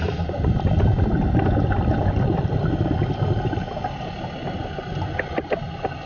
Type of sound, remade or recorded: recorded